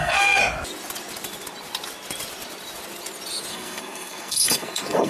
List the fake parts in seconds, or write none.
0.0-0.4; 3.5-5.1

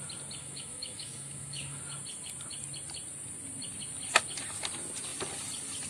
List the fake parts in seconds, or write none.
0.4-1.8

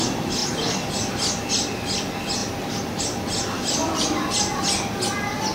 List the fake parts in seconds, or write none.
none

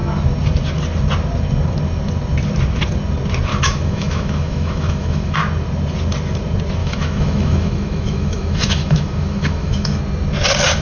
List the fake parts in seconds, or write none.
3.5-5.4; 6.8-10.0

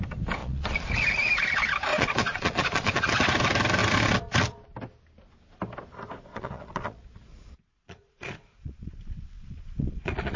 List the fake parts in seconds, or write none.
0.4-0.9; 1.9-3.1; 6.3-10.4

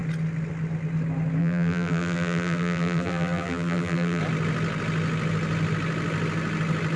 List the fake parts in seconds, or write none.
1.4-4.2